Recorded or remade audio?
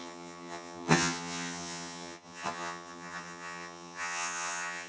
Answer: remade